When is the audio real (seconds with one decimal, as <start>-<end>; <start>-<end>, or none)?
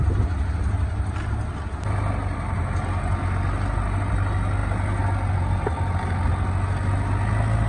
0.0-7.7